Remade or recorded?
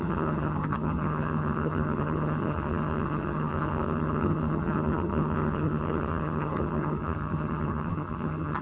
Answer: remade